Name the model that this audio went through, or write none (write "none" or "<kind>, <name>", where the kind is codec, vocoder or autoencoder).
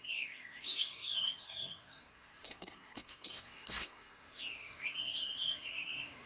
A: codec, SNAC